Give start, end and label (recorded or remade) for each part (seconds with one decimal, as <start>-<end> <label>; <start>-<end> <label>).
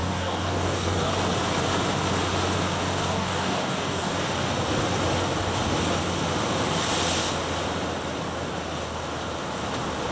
0.0-1.1 remade; 1.1-3.0 recorded; 3.0-4.1 remade; 4.1-10.1 recorded